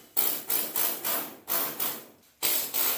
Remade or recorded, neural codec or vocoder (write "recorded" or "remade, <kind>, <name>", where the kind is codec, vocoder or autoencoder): recorded